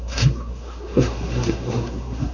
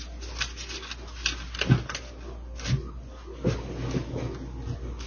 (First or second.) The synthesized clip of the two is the first